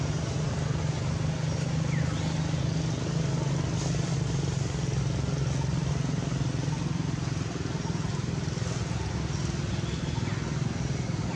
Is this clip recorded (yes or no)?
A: yes